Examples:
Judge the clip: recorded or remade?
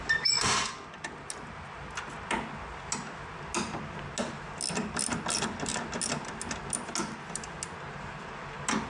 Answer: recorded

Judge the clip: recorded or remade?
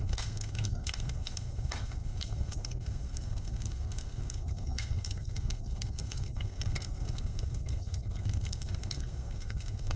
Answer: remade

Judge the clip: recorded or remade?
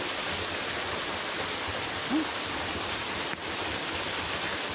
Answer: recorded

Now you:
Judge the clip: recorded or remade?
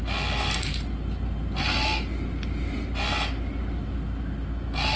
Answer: recorded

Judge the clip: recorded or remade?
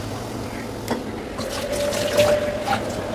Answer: recorded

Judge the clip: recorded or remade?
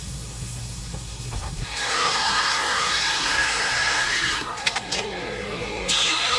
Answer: remade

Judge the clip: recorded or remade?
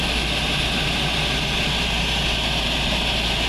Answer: recorded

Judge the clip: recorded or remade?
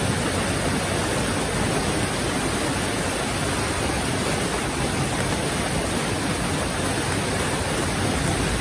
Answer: recorded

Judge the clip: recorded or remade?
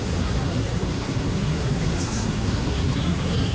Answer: remade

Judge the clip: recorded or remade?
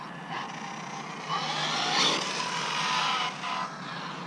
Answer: recorded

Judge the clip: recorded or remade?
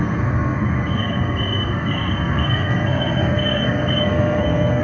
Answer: remade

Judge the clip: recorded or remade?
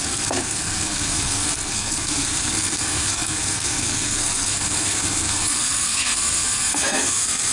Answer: remade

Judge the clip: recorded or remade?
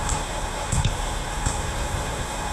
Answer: remade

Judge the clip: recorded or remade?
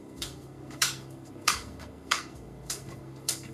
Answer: remade